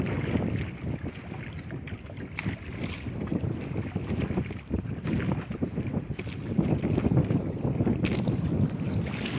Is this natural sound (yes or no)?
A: yes